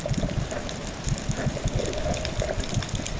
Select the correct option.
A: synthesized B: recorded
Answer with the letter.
B